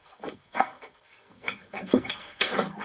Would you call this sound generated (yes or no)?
yes